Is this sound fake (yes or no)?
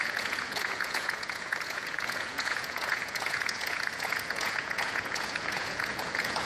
yes